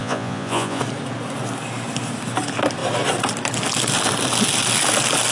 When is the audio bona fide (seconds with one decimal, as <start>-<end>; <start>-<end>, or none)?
0.8-5.3